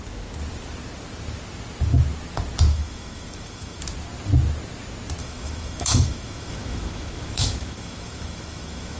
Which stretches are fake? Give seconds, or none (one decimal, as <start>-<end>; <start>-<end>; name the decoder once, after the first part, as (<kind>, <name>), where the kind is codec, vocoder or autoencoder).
2.7-3.8 (autoencoder, DAC-VAE); 5.2-9.0